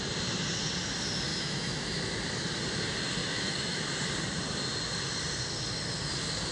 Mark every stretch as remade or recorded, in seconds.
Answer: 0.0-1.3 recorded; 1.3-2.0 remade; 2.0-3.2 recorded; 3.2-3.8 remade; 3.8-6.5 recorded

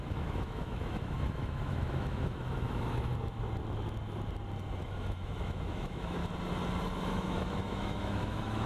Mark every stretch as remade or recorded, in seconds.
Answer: 0.0-3.1 remade; 3.1-4.8 recorded; 4.8-6.2 remade; 6.2-7.1 recorded; 7.1-8.7 remade

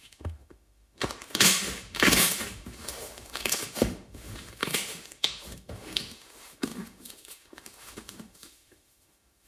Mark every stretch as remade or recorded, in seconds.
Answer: 0.0-9.5 remade

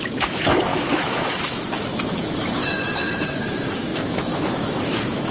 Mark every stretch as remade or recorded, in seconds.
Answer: 0.0-5.3 remade

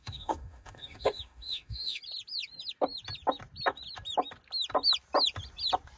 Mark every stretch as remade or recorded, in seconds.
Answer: 0.0-2.0 remade; 2.0-6.0 recorded

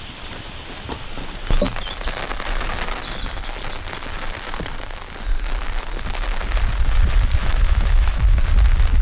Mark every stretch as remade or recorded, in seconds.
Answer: 0.0-7.4 recorded; 7.4-8.2 remade; 8.2-9.0 recorded